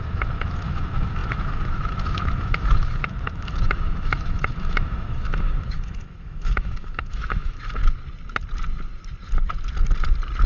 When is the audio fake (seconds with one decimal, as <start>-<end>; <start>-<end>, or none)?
0.0-7.8